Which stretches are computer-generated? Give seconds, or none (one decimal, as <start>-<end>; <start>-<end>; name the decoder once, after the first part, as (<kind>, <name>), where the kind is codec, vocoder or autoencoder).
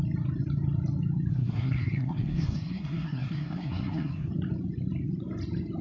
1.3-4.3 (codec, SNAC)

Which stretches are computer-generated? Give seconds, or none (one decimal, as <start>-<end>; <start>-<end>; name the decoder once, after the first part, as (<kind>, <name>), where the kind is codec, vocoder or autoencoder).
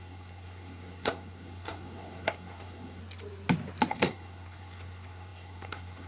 0.0-3.0 (codec, SNAC); 3.9-6.1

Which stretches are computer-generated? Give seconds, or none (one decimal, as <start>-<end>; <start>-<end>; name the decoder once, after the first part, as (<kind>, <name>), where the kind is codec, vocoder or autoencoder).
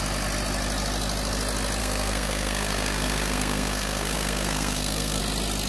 1.8-5.2 (codec, SNAC)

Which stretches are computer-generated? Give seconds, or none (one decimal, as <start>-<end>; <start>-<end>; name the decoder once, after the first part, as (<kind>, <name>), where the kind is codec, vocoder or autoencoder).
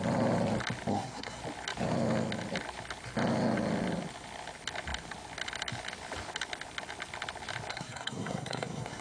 0.9-1.4 (codec, SNAC); 7.7-9.0